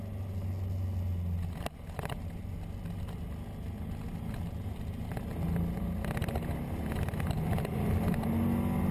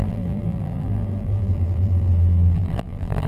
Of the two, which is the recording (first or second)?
first